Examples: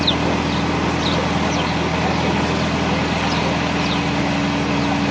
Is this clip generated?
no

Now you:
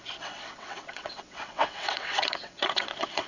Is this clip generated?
yes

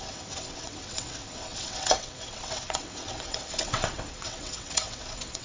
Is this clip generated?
yes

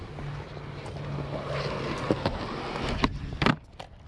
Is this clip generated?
no